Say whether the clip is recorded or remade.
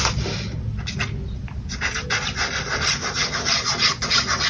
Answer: recorded